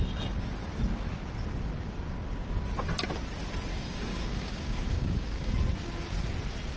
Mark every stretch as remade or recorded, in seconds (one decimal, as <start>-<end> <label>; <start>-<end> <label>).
0.0-3.7 recorded; 3.7-5.5 remade; 5.5-6.8 recorded